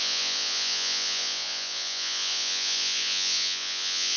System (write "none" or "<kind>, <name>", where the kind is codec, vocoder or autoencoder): vocoder, Vocos